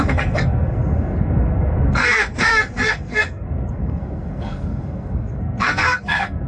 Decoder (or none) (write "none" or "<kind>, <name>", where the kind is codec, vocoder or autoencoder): codec, SNAC